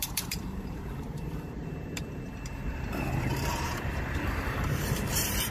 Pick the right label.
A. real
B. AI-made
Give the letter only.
B